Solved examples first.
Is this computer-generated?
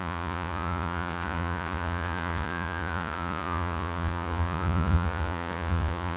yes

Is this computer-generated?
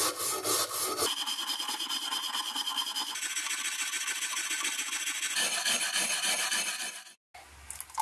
no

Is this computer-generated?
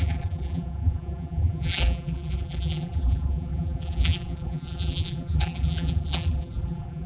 yes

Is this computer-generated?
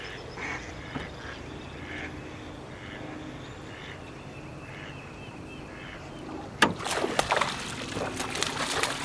no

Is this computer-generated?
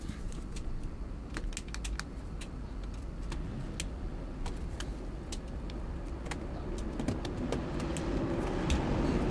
no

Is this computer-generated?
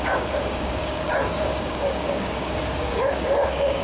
yes